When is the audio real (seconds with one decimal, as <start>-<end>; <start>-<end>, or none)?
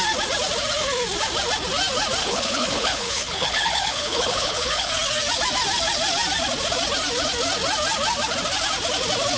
0.0-2.2; 4.9-9.4